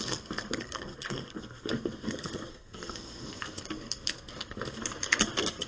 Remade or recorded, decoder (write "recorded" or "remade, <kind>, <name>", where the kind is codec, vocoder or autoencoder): remade, codec, SNAC